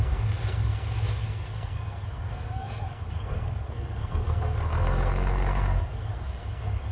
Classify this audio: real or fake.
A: fake